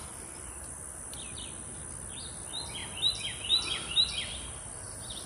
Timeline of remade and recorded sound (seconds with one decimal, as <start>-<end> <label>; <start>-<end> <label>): 0.0-5.3 recorded